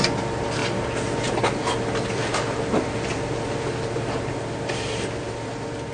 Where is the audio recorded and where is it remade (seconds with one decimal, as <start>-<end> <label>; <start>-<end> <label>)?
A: 0.0-5.9 recorded